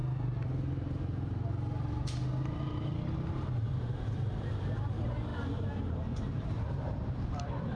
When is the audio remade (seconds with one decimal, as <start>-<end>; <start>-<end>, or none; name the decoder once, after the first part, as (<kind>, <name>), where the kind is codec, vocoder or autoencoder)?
3.6-7.8 (vocoder, BigVGAN v2)